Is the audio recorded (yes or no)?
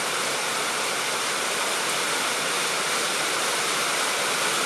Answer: yes